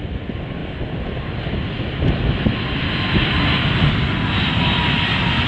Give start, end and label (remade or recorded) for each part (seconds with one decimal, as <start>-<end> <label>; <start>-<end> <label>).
0.0-5.5 recorded